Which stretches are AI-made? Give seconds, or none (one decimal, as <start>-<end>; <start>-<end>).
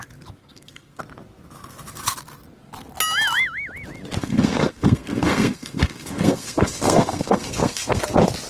0.4-1.0; 4.2-8.0